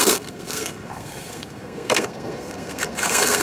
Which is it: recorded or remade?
remade